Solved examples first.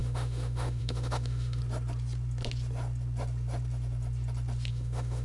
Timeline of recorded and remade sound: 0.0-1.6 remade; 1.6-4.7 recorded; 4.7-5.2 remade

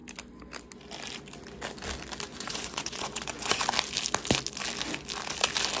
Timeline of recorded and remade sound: 0.0-2.3 recorded; 2.3-3.6 remade; 3.6-5.8 recorded

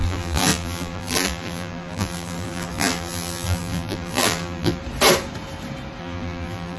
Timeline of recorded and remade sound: 0.0-4.8 remade; 4.8-6.0 recorded; 6.0-6.8 remade

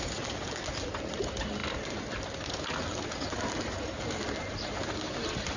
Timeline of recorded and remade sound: 0.0-5.6 recorded

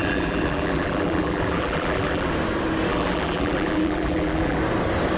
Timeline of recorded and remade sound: 0.0-2.3 remade; 2.3-2.9 recorded; 2.9-4.6 remade; 4.6-5.2 recorded

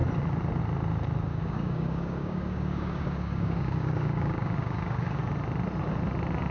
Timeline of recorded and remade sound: 0.0-1.3 recorded; 1.3-5.2 remade; 5.2-6.5 recorded

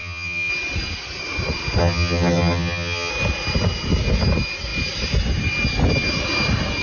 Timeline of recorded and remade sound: 0.0-0.5 remade; 0.5-1.8 recorded; 1.8-3.1 remade; 3.1-6.8 recorded

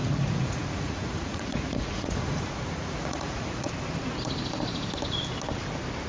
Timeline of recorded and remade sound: 0.0-3.7 remade; 3.7-6.1 recorded